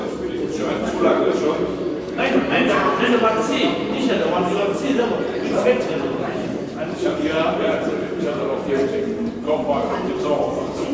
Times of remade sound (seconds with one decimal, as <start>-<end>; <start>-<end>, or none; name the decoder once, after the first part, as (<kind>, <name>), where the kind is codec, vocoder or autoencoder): 0.0-10.9 (vocoder, BigVGAN v2)